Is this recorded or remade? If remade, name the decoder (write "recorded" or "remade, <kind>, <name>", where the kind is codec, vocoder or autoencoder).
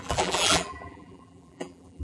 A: remade, vocoder, BigVGAN v2